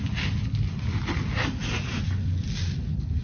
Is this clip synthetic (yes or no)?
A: no